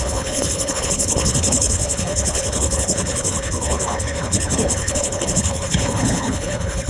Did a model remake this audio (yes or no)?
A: yes